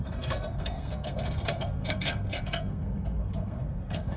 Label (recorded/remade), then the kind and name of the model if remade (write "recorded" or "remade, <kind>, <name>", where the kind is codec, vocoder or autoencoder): remade, codec, SNAC